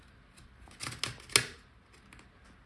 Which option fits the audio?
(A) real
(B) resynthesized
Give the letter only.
A